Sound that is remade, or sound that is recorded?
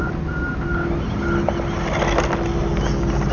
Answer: recorded